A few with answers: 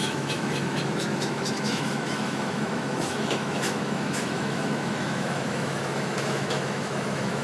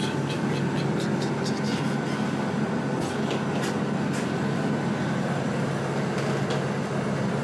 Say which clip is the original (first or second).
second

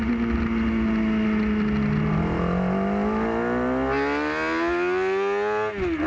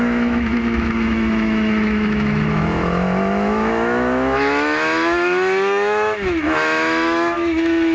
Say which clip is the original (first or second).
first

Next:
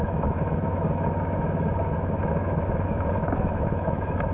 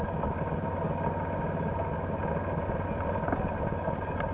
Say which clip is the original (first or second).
second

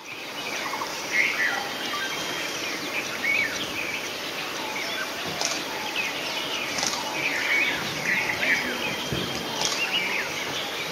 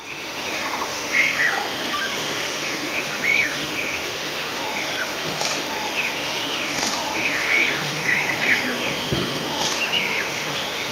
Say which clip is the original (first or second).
first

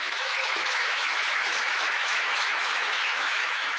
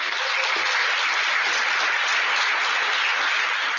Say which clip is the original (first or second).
second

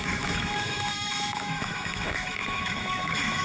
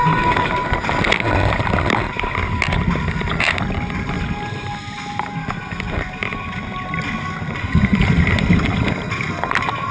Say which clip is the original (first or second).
second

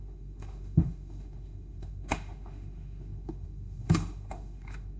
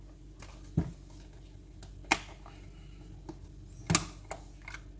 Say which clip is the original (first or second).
second